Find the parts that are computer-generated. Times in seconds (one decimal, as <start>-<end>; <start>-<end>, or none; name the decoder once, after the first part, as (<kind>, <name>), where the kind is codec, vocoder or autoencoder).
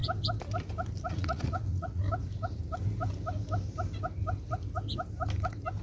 1.1-2.0 (vocoder, Vocos)